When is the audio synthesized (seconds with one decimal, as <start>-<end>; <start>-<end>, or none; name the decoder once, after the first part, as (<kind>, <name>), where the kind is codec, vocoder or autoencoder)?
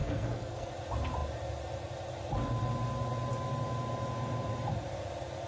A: 0.0-0.7 (codec, SNAC)